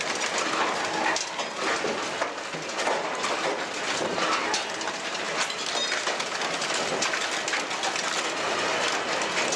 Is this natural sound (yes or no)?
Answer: yes